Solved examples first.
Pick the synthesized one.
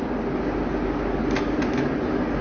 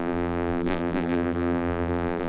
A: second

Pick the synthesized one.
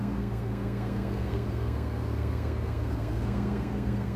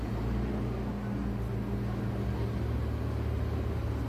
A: first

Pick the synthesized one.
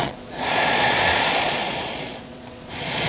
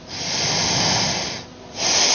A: first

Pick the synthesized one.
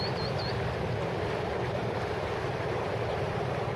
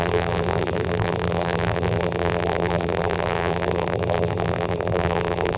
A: second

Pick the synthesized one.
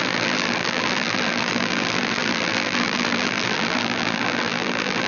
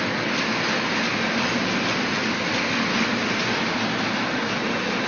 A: first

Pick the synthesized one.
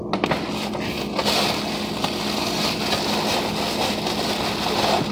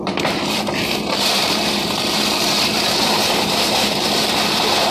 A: second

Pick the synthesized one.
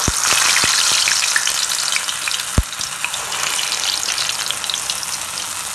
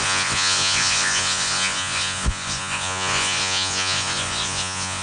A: second